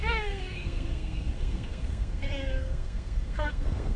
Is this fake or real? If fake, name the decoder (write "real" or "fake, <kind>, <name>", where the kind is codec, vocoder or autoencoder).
fake, codec, SNAC